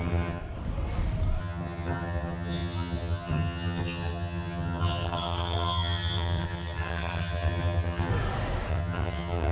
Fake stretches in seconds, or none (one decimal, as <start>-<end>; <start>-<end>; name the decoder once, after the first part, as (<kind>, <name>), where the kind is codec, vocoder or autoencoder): 0.0-0.4 (vocoder, HiFi-GAN); 1.4-8.1; 8.7-9.5